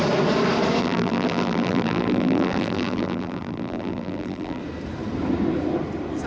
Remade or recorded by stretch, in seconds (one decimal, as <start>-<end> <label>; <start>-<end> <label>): 0.0-0.8 recorded; 0.8-4.6 remade; 4.6-6.3 recorded